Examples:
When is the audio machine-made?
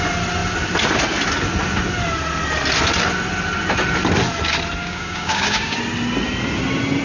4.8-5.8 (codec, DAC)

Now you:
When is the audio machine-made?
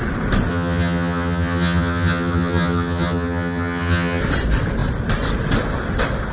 0.5-4.2 (vocoder, HiFi-GAN)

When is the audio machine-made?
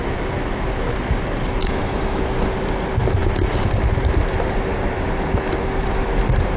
1.6-2.2 (autoencoder, DAC-VAE)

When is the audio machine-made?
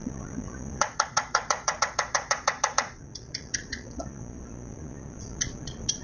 0.0-6.0 (vocoder, Vocos)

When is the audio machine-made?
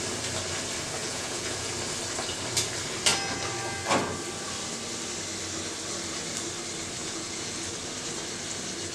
1.0-1.7 (vocoder, Vocos); 7.0-7.6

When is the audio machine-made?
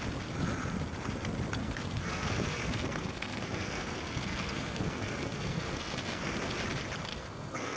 1.6-6.3 (codec, SNAC); 7.1-7.8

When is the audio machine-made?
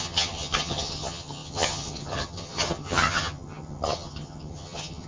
0.0-5.1 (vocoder, HiFi-GAN)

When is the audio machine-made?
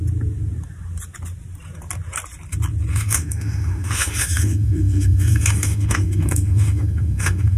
2.9-7.6 (autoencoder, DAC-VAE)